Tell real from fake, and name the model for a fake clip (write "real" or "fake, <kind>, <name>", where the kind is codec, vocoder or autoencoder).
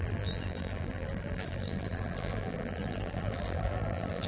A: fake, vocoder, BigVGAN v2